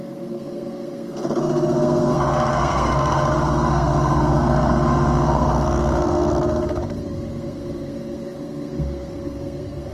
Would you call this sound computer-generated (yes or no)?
yes